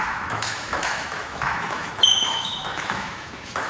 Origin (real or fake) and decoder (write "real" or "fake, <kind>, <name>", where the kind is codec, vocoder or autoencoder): fake, autoencoder, DAC-VAE